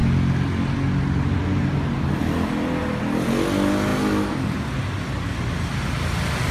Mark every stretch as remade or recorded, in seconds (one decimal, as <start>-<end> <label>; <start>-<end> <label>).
0.0-6.5 recorded